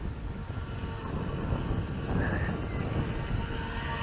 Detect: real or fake real